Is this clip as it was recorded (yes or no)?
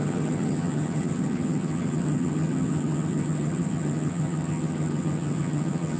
no